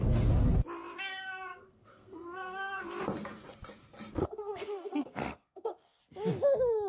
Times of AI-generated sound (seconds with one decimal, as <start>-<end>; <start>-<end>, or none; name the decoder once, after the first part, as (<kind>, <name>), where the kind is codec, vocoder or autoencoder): 1.5-2.8 (codec, SNAC); 4.2-6.0